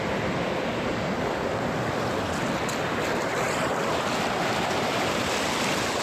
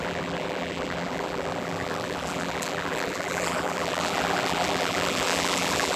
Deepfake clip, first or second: second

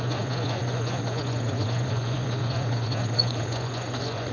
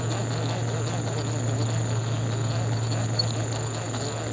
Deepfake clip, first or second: first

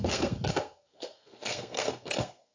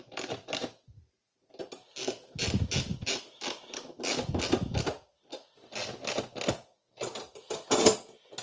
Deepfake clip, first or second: first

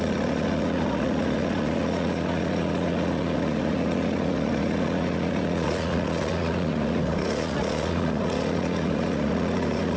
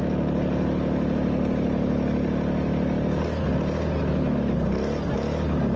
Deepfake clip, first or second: first